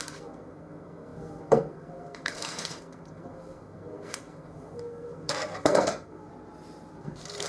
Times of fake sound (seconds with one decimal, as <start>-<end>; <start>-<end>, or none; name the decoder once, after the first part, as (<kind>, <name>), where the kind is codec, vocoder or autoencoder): 0.0-6.3 (codec, SNAC); 6.9-7.5